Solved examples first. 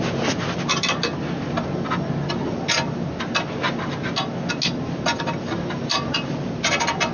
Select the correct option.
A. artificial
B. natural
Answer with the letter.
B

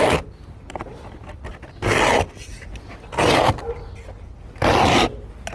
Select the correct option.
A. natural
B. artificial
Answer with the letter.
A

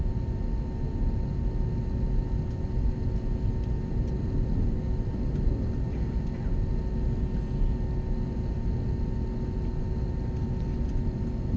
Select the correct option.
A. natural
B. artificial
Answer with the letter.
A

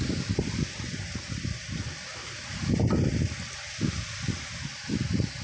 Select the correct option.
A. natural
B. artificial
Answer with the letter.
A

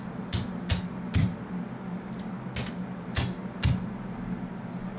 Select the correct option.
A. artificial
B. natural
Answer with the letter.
B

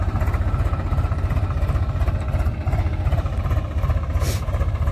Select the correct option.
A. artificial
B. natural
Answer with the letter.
B